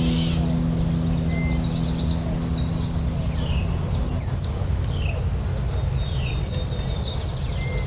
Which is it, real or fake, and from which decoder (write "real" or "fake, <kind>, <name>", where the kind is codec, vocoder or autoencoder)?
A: real